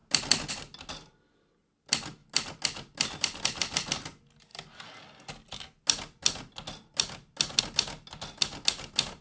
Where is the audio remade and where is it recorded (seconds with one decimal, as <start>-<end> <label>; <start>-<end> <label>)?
0.0-9.2 recorded